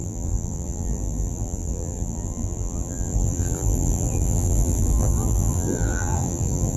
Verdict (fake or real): fake